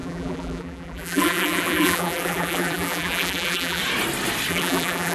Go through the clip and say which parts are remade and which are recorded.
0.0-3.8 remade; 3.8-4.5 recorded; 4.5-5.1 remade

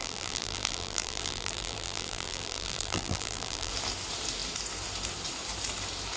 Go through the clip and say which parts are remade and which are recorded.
0.0-3.7 remade; 3.7-6.2 recorded